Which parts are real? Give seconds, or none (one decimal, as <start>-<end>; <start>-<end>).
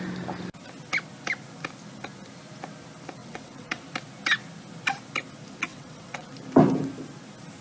0.0-3.2; 3.8-5.7; 6.3-7.6